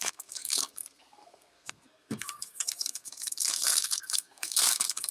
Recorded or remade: remade